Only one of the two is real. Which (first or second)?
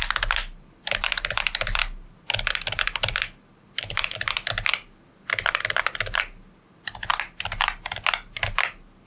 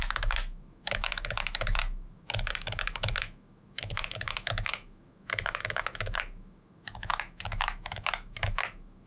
first